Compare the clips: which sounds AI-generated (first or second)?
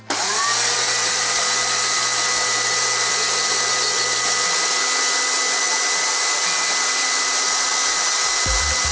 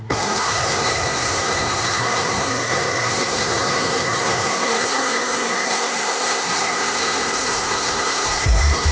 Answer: second